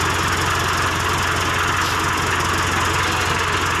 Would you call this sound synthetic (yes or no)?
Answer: no